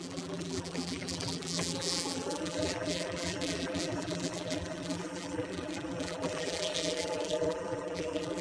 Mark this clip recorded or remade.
remade